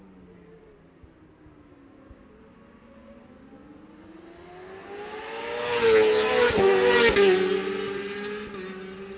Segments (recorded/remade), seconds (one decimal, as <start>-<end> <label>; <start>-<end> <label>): 0.0-9.2 recorded